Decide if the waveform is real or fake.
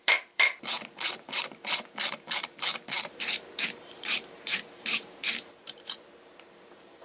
fake